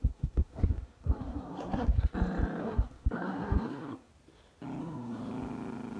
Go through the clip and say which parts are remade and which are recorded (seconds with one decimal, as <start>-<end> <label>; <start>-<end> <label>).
0.0-2.1 remade; 2.1-2.6 recorded; 2.6-4.1 remade; 4.1-4.8 recorded; 4.8-5.2 remade; 5.2-6.0 recorded